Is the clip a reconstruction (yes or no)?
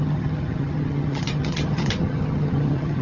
yes